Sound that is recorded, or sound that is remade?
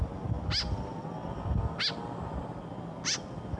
recorded